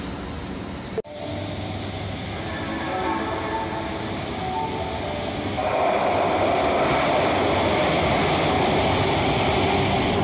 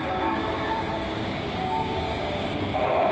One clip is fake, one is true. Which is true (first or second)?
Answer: first